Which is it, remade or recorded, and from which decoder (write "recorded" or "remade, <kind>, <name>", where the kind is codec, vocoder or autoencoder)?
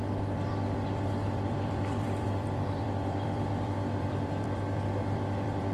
remade, vocoder, BigVGAN v2